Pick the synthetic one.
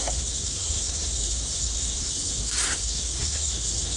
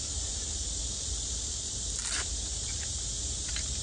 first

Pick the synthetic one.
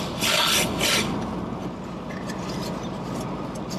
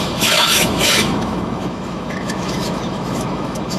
second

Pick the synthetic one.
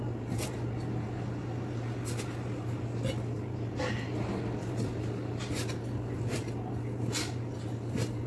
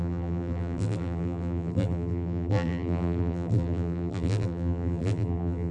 second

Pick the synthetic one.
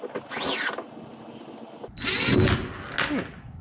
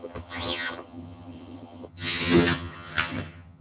second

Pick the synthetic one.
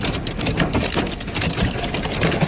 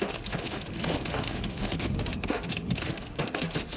second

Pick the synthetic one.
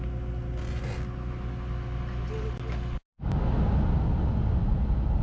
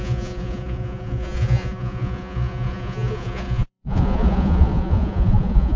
second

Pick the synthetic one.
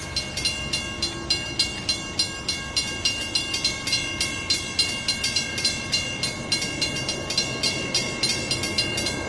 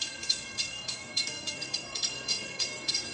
second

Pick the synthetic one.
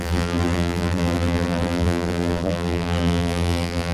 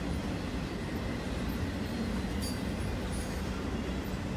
first